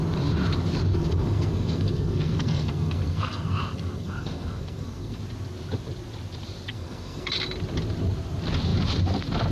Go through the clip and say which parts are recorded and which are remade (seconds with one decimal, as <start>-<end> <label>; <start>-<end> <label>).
0.0-0.9 recorded; 0.9-5.2 remade; 5.2-6.7 recorded; 6.7-7.3 remade; 7.3-9.5 recorded